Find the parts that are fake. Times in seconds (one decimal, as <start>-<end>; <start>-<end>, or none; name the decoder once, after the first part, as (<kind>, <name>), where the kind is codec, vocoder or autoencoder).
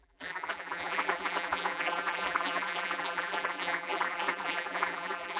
0.0-5.4 (vocoder, BigVGAN v2)